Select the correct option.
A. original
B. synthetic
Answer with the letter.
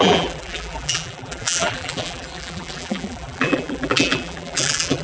B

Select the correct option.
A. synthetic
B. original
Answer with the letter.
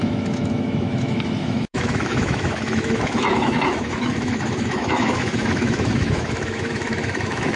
A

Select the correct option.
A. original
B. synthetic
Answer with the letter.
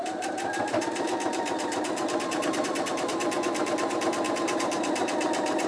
B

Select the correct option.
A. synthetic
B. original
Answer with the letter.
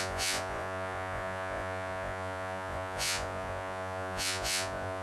A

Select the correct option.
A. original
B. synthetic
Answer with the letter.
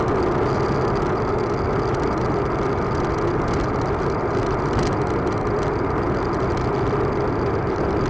A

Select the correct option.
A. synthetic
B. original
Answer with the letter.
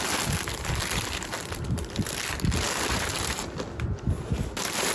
A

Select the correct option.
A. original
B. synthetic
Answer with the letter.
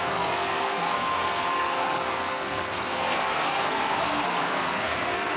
B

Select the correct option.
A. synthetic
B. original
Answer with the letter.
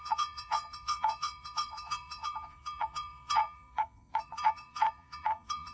A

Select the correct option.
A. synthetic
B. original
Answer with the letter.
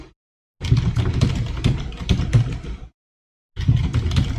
B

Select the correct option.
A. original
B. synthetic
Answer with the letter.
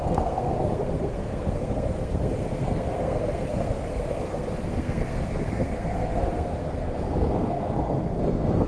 B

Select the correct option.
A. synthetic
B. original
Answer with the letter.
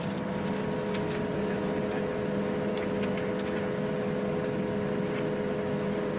B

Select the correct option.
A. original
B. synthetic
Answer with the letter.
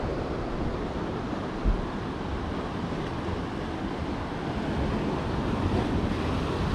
A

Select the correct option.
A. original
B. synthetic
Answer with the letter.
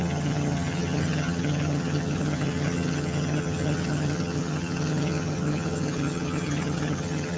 B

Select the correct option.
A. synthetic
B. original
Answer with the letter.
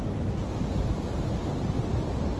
B